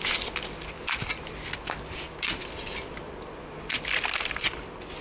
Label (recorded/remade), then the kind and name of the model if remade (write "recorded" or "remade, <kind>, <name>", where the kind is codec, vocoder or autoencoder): recorded